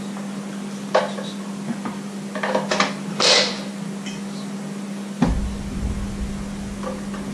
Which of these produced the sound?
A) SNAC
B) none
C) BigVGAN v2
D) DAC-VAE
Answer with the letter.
B